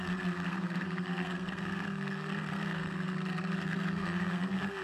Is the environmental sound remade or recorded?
remade